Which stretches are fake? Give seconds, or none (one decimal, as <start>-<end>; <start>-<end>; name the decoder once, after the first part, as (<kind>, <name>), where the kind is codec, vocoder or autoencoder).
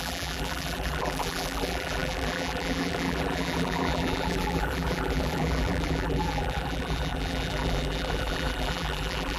0.0-9.4 (vocoder, BigVGAN v2)